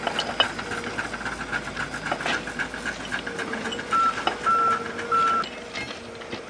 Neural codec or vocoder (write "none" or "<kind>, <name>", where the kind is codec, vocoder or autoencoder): none